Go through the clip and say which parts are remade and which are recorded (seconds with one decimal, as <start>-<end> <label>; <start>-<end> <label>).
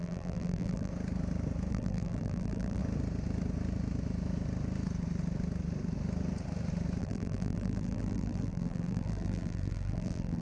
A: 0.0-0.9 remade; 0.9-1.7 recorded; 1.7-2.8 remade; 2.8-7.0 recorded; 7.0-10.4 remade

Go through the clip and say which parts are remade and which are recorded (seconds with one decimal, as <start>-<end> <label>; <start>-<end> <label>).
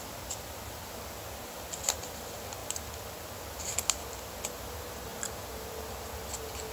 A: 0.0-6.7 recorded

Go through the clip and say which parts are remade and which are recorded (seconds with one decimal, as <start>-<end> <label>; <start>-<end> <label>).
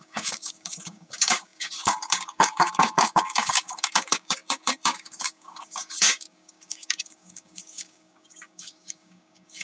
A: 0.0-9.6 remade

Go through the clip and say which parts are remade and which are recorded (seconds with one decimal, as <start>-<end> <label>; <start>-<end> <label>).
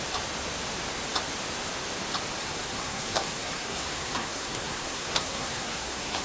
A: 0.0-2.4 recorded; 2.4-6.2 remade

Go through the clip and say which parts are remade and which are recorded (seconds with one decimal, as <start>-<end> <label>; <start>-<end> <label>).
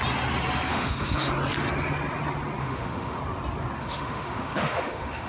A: 0.0-0.7 recorded; 0.7-1.3 remade; 1.3-2.6 recorded; 2.6-3.2 remade; 3.2-3.8 recorded; 3.8-5.3 remade